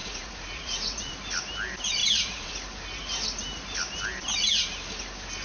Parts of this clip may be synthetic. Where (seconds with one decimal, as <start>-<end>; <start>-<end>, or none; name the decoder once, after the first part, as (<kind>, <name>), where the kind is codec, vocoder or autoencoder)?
0.0-1.1 (vocoder, Vocos); 2.0-2.5